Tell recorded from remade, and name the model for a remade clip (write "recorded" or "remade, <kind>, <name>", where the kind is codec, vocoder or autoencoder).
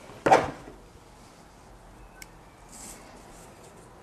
recorded